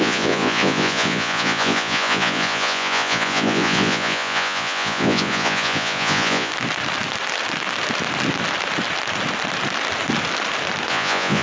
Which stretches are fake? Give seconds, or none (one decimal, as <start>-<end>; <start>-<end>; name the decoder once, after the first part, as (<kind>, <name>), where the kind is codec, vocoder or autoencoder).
0.0-6.5 (vocoder, Vocos); 10.9-11.4